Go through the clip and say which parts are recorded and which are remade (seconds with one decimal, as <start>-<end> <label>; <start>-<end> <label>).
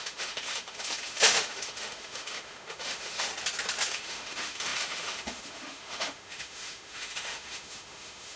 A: 0.0-3.3 remade; 3.3-3.9 recorded; 3.9-8.4 remade